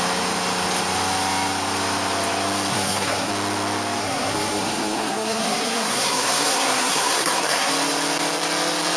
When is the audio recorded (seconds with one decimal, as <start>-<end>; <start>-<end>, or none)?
0.0-2.7; 3.3-4.0; 7.7-9.0